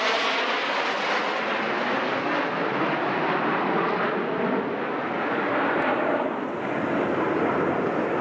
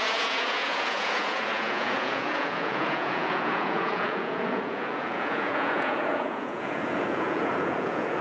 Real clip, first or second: first